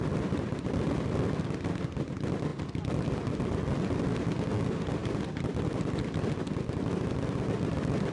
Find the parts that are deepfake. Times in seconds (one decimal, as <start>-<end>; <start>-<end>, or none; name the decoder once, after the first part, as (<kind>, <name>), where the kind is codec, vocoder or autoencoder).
none